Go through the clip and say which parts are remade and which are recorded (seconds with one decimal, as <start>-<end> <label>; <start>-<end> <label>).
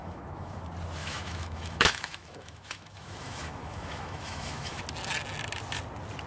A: 0.0-0.6 remade; 0.6-1.0 recorded; 1.0-4.8 remade; 4.8-6.3 recorded